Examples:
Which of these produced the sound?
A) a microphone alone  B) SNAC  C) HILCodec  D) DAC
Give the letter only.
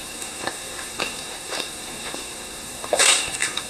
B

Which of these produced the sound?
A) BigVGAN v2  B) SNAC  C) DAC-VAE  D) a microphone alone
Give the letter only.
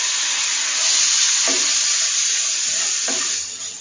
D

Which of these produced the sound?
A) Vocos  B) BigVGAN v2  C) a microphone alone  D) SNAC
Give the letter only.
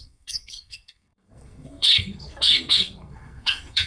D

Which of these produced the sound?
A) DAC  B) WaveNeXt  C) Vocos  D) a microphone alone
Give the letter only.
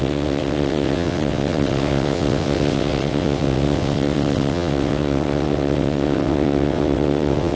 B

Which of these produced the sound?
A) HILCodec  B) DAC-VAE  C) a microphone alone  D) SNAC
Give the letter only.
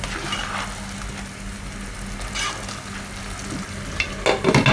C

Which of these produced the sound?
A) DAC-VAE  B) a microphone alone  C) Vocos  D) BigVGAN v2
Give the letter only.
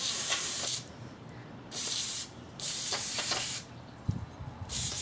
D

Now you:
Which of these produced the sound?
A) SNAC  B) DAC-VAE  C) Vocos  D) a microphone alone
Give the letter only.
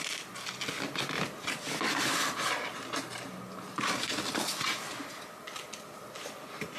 D